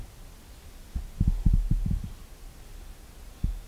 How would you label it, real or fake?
real